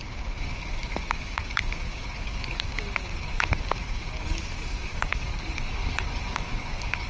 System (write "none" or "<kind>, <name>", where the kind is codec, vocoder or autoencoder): codec, DAC